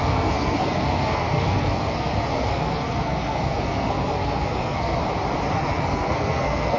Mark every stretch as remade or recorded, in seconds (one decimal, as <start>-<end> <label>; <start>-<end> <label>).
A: 0.0-5.0 remade; 5.0-5.5 recorded; 5.5-6.8 remade